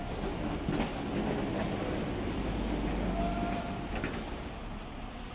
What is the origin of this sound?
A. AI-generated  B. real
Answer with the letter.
B